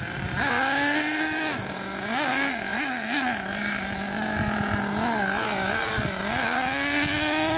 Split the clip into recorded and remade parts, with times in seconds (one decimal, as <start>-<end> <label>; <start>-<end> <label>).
0.0-7.6 recorded